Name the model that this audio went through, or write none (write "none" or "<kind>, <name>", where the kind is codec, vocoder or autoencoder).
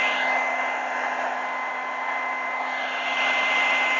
none